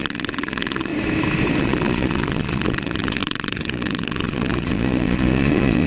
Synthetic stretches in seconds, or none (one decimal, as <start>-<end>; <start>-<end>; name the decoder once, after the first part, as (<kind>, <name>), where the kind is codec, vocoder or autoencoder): 0.0-0.9 (vocoder, Vocos); 1.6-5.9